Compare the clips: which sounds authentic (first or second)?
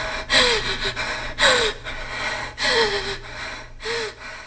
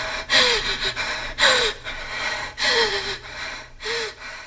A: first